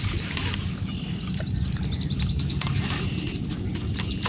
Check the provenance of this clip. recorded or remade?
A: recorded